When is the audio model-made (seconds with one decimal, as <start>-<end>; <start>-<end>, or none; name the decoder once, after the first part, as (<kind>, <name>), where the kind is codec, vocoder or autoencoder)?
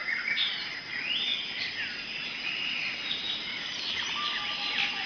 none